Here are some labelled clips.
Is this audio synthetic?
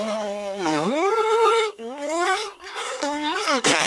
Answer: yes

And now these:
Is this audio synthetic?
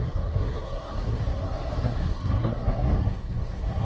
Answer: yes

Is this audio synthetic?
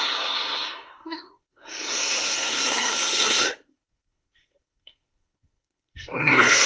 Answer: yes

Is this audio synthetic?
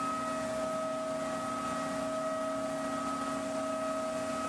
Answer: no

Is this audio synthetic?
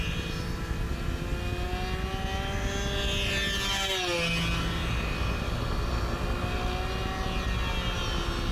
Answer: no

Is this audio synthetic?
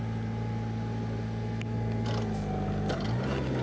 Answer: no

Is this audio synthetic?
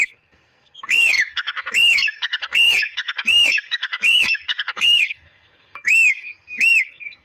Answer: yes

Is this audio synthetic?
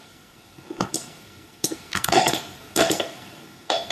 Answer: yes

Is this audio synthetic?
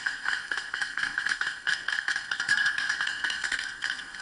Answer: yes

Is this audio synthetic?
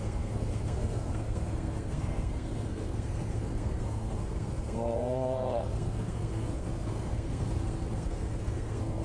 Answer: yes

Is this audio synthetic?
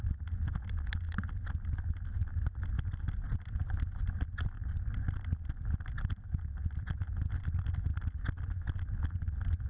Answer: no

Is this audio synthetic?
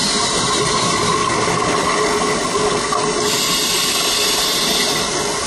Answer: no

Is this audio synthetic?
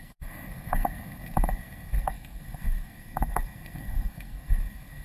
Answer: yes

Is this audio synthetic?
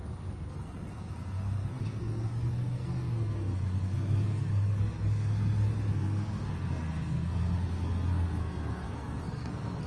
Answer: yes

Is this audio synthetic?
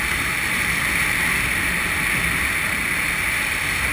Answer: no